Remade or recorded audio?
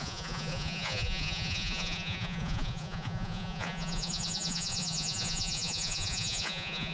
remade